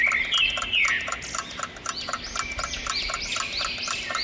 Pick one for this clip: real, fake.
real